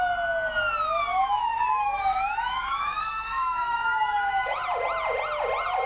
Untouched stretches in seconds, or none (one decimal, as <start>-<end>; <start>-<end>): 0.0-1.1; 4.6-5.9